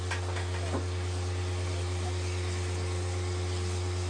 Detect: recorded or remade recorded